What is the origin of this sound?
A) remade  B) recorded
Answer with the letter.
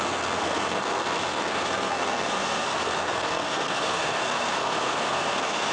A